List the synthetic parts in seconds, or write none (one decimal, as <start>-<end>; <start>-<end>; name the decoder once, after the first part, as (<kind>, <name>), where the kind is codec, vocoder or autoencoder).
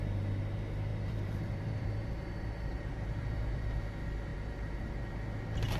0.9-3.6 (vocoder, BigVGAN v2); 4.3-4.9